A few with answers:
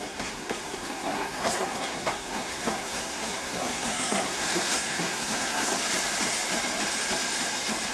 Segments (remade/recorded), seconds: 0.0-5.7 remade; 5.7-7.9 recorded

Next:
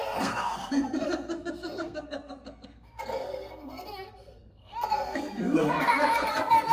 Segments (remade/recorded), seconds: 0.0-6.7 remade

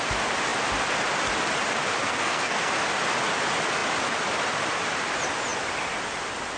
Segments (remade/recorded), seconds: 0.0-2.0 recorded; 2.0-2.7 remade; 2.7-6.6 recorded

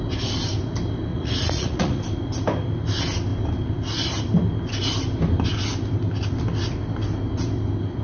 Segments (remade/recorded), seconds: 0.0-1.1 recorded; 1.1-2.0 remade; 2.0-8.0 recorded

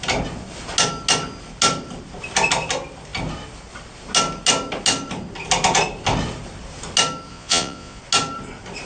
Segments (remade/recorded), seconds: 0.0-7.3 recorded; 7.3-8.0 remade; 8.0-8.9 recorded

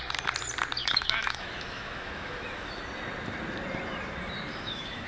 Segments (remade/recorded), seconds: 0.0-0.8 recorded; 0.8-2.8 remade; 2.8-4.5 recorded; 4.5-5.1 remade

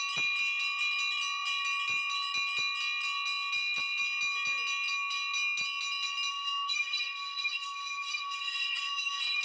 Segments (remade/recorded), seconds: 0.0-6.3 recorded; 6.3-9.4 remade